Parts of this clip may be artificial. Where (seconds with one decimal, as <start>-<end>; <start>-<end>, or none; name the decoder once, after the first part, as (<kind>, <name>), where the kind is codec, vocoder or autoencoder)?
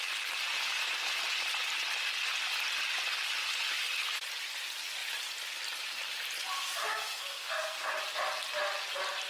6.8-8.0 (codec, SNAC)